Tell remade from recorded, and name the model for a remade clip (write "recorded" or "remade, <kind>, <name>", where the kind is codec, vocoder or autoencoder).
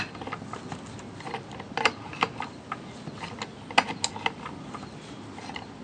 recorded